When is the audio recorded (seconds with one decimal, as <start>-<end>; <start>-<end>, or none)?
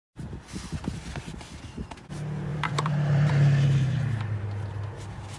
0.0-2.5; 3.3-5.4